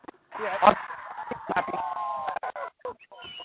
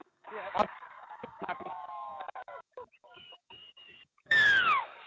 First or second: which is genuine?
first